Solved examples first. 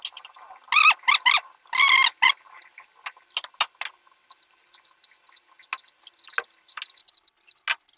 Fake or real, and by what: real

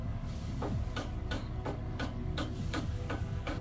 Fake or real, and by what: fake, codec, DAC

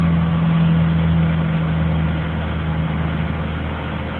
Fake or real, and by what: real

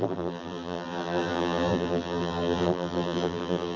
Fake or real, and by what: fake, vocoder, BigVGAN v2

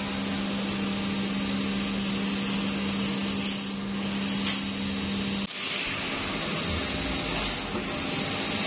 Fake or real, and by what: real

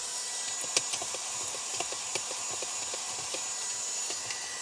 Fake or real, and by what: real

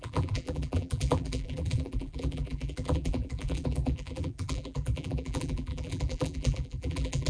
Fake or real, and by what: fake, vocoder, BigVGAN v2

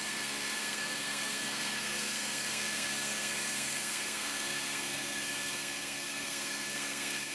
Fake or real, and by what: fake, codec, SNAC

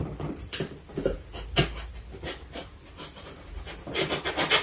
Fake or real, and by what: real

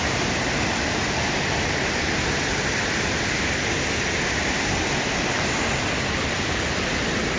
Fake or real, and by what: real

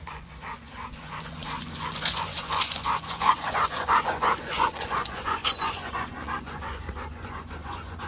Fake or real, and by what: fake, vocoder, Vocos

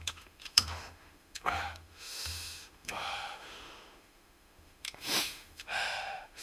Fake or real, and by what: fake, autoencoder, DAC-VAE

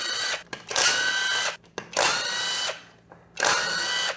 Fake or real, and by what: real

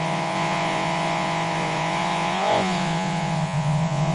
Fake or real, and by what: fake, vocoder, Vocos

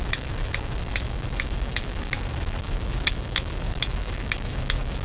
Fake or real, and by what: fake, autoencoder, DAC-VAE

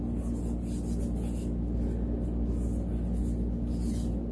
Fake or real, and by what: real